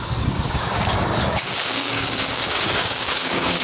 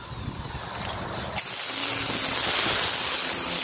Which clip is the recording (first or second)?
second